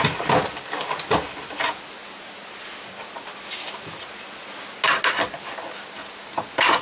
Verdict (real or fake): real